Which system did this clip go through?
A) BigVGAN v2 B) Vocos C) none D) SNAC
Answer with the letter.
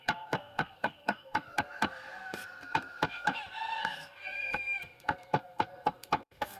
D